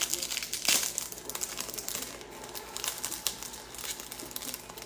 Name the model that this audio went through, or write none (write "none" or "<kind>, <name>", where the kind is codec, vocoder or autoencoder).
none